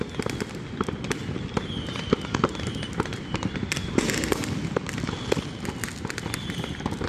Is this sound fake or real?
real